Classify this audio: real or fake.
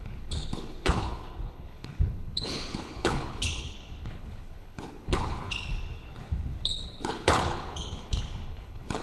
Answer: fake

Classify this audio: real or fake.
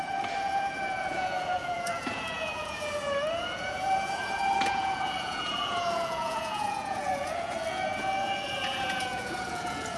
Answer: fake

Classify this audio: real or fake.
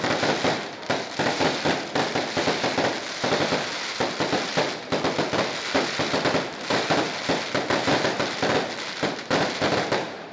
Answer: real